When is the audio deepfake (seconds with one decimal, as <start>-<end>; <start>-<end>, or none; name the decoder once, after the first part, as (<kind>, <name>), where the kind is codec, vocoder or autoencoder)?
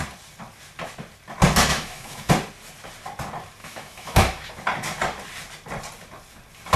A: 1.7-2.3 (autoencoder, DAC-VAE); 3.6-4.5